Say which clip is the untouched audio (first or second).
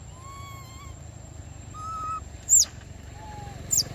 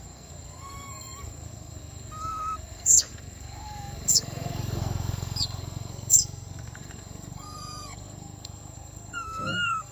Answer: first